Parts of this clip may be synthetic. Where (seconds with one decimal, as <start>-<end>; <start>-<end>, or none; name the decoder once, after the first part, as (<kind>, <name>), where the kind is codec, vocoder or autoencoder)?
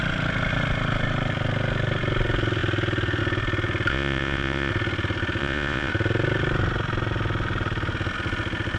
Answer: 3.9-4.7 (vocoder, Vocos); 5.4-5.9